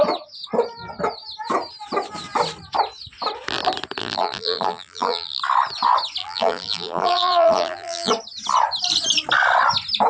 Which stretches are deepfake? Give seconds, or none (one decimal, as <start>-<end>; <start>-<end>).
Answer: 4.0-5.4; 6.2-8.1